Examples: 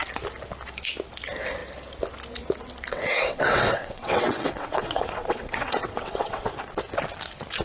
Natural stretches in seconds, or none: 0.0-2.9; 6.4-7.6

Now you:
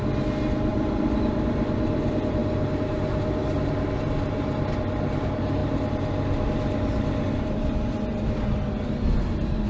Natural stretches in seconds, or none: 0.0-0.7; 2.0-9.7

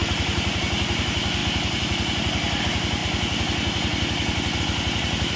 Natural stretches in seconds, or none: 0.6-5.4

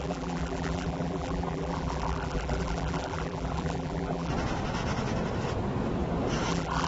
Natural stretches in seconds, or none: 4.3-6.5

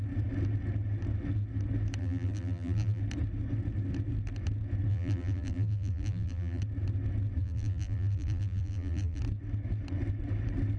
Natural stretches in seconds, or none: 0.0-2.0; 3.0-4.9; 6.6-7.4; 9.2-10.8

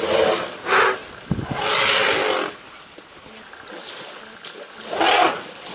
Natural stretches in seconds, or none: 0.0-5.7

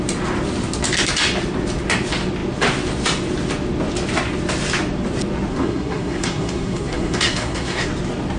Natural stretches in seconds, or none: 0.0-5.5; 7.9-8.4